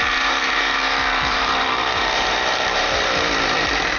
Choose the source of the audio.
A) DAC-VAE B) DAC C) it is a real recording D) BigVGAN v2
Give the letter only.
D